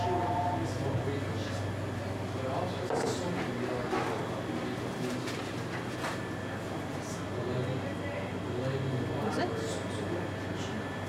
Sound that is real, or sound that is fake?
real